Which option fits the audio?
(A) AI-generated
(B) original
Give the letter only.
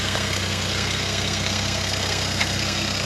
A